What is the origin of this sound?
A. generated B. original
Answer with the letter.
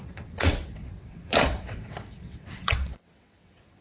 A